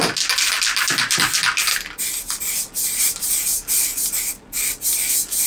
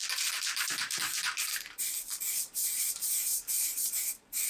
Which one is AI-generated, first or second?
second